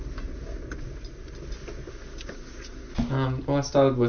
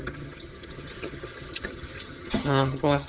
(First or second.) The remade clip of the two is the second